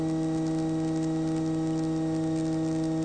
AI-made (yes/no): no